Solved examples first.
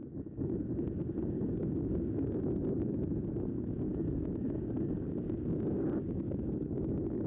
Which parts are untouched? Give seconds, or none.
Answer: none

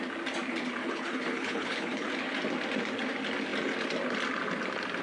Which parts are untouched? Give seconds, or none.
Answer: 0.0-0.8; 2.1-5.0